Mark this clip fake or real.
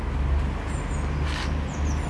real